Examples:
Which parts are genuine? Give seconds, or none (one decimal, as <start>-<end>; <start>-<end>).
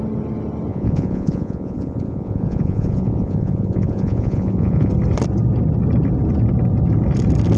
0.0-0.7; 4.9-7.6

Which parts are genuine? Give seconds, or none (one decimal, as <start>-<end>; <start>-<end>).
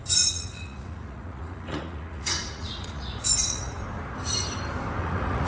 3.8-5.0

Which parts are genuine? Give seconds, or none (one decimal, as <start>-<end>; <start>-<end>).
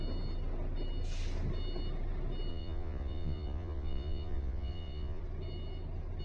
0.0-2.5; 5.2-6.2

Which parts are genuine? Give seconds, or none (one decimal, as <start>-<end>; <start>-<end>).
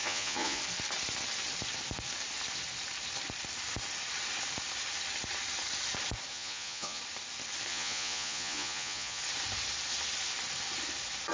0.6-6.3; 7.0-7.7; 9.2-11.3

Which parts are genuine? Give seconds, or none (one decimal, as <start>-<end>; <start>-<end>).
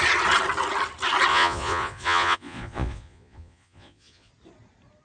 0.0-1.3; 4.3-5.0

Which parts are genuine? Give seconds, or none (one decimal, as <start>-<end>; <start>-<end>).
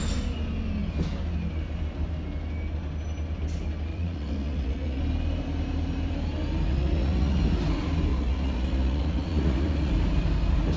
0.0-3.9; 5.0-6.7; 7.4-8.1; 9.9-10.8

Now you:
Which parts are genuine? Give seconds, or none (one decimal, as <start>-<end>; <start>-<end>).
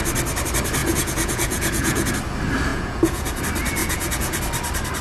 0.0-0.8; 2.1-2.7; 3.4-3.8; 4.4-5.0